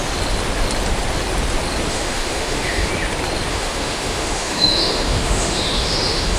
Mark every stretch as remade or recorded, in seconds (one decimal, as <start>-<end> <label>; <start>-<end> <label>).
0.0-1.9 recorded; 1.9-2.9 remade; 2.9-3.5 recorded; 3.5-6.4 remade